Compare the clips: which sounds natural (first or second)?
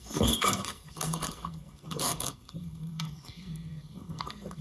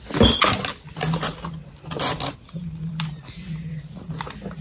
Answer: second